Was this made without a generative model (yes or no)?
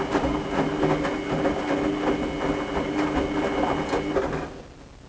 yes